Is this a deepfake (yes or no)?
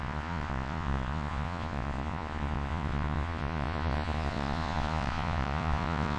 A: yes